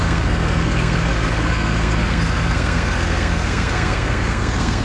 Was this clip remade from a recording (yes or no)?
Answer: yes